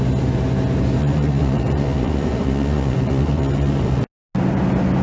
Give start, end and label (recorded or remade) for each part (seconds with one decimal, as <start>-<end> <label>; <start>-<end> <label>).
0.0-1.0 recorded; 1.0-4.0 remade; 4.0-5.0 recorded